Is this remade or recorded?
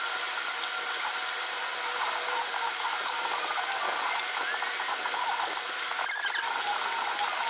recorded